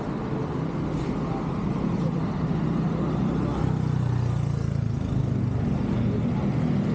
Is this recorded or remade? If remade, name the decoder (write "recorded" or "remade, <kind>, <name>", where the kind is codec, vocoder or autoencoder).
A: recorded